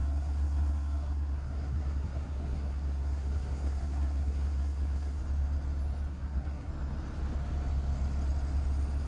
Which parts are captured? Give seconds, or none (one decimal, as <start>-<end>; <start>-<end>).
5.2-6.1; 6.7-9.1